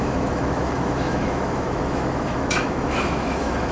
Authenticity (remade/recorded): remade